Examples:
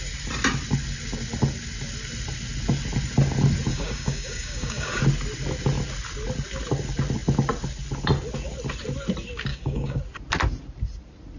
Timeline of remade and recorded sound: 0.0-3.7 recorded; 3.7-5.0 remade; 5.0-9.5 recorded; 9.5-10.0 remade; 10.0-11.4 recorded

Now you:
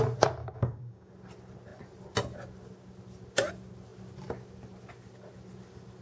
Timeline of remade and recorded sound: 0.0-0.4 recorded; 0.4-1.1 remade; 1.1-6.0 recorded

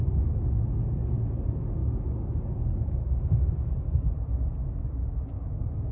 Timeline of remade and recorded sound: 0.0-1.8 recorded; 1.8-3.7 remade; 3.7-4.6 recorded; 4.6-5.9 remade

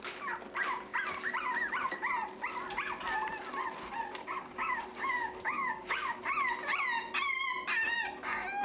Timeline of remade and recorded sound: 0.0-4.2 recorded; 4.2-6.2 remade; 6.2-8.6 recorded